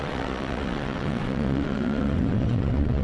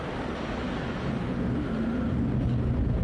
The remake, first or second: first